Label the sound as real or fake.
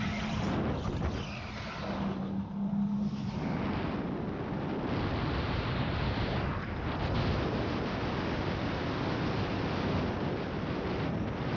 real